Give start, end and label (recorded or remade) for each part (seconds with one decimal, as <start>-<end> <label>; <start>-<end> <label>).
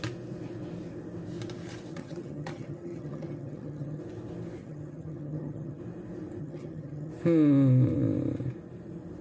0.0-1.9 recorded; 1.9-4.0 remade; 4.0-4.6 recorded; 4.6-5.8 remade; 5.8-6.4 recorded; 6.4-7.1 remade; 7.1-9.2 recorded